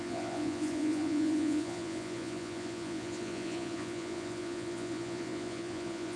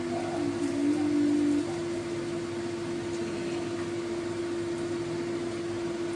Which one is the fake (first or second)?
first